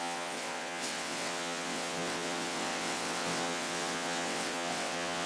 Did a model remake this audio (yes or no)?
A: yes